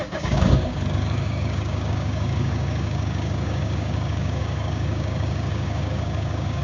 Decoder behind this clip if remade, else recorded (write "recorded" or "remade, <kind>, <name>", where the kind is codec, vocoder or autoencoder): remade, codec, DAC